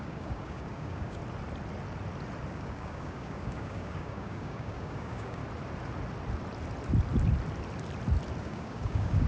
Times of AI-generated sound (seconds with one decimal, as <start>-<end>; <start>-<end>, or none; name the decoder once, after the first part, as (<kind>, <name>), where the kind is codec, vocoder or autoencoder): 0.0-1.2 (codec, DAC); 2.5-5.4; 8.4-9.3

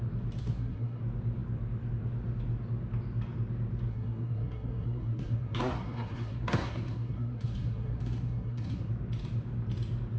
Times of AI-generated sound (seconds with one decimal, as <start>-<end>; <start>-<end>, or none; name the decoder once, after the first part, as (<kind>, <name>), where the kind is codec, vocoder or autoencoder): 0.4-1.0 (codec, SNAC); 3.9-8.9